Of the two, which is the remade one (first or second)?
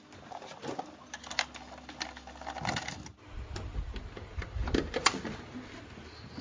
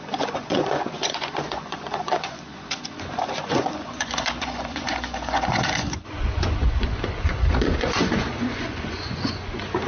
second